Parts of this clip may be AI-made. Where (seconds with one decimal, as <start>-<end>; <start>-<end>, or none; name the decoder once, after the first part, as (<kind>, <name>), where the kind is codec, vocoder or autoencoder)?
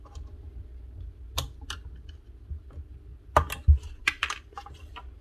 none